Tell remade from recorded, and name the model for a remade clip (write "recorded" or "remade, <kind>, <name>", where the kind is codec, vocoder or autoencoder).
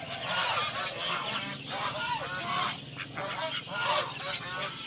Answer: recorded